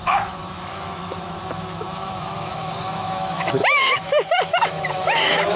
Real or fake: fake